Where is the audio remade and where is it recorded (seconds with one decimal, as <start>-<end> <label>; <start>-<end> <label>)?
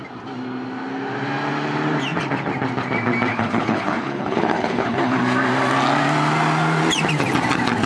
0.0-3.3 recorded; 3.3-5.2 remade; 5.2-7.9 recorded